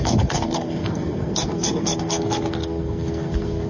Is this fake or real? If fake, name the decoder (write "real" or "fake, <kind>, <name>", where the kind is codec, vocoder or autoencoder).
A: fake, codec, SNAC